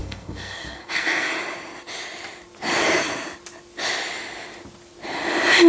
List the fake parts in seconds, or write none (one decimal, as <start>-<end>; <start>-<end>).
0.0-1.3